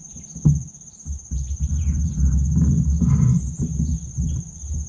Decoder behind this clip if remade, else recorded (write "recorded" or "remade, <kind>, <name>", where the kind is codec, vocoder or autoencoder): recorded